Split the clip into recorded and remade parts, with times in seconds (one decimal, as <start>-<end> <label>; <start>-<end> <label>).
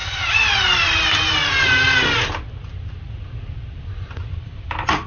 0.0-2.7 recorded; 2.7-5.1 remade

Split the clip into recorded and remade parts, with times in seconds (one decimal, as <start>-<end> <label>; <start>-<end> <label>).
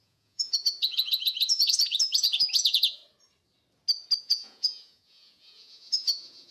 0.0-3.0 remade; 3.0-4.2 recorded; 4.2-6.5 remade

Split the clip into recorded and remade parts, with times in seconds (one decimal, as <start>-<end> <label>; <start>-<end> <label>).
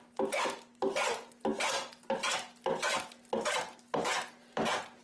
0.0-5.0 recorded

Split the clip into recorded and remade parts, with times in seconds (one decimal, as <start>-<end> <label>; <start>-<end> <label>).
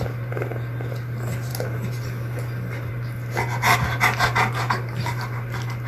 0.0-5.9 recorded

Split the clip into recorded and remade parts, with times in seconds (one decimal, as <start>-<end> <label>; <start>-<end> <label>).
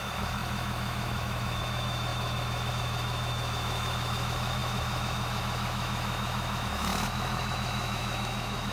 0.0-8.7 remade